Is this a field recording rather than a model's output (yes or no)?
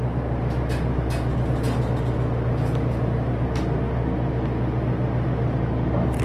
yes